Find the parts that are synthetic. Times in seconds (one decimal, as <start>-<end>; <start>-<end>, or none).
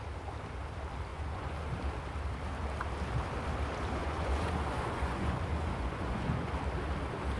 1.1-1.6; 4.0-6.5